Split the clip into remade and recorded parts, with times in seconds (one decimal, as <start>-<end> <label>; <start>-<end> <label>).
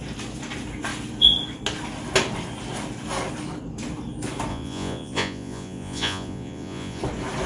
0.0-4.5 recorded; 4.5-7.0 remade; 7.0-7.5 recorded